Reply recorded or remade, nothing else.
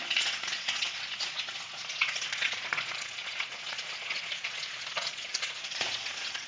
remade